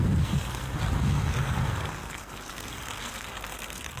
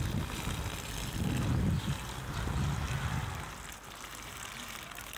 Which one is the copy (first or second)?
first